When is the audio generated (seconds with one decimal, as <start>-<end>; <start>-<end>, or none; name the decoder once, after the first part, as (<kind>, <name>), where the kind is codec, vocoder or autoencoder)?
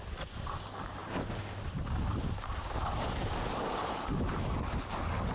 none